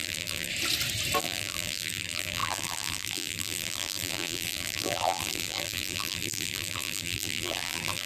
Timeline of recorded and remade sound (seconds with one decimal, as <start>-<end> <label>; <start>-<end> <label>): 0.0-0.5 remade; 0.5-1.2 recorded; 1.2-8.1 remade